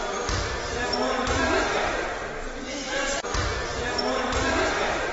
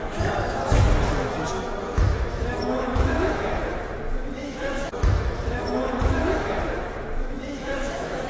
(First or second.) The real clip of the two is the first